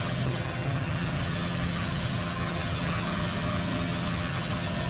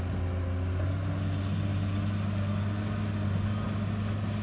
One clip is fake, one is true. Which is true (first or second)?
second